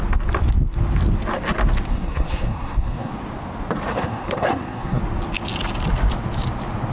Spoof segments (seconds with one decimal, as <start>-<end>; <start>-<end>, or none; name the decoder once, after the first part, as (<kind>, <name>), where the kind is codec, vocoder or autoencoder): 1.9-3.1 (codec, SNAC); 3.9-5.0